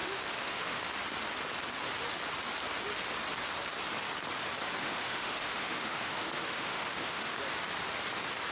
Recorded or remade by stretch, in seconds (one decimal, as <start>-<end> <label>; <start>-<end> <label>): 0.0-0.9 remade; 0.9-4.8 recorded; 4.8-7.4 remade; 7.4-8.5 recorded